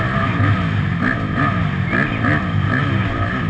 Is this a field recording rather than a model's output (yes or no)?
yes